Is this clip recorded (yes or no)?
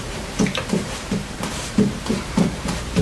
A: no